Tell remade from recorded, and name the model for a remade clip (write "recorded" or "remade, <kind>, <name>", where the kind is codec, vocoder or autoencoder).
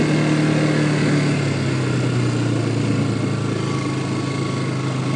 recorded